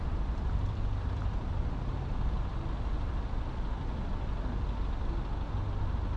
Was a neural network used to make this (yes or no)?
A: no